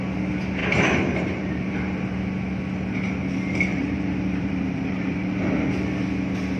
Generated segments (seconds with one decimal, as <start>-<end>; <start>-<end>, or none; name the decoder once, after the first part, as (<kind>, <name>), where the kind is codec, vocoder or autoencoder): 0.6-1.7 (vocoder, BigVGAN v2); 3.7-5.4